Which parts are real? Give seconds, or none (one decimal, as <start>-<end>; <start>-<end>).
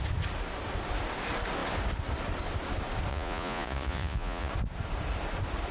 0.0-3.1; 4.5-5.7